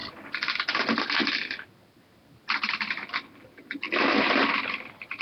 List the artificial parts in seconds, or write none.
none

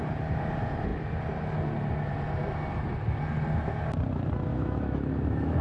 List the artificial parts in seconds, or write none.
4.5-5.6 (autoencoder, DAC-VAE)

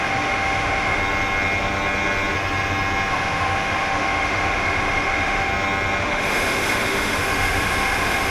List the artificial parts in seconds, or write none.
0.0-1.0 (autoencoder, DAC-VAE); 3.1-5.5; 6.0-8.3

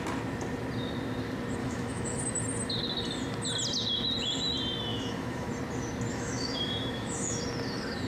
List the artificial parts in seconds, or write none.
1.6-2.2 (autoencoder, DAC-VAE); 4.9-5.5; 6.1-7.4

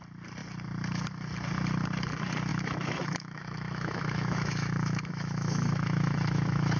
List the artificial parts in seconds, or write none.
2.5-6.8 (autoencoder, DAC-VAE)

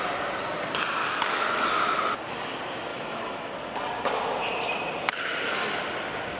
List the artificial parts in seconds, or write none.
1.0-1.9 (autoencoder, DAC-VAE); 2.9-3.5

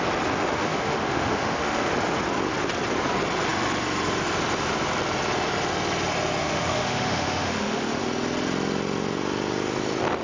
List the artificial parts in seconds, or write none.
0.4-1.9 (autoencoder, DAC-VAE); 6.4-8.0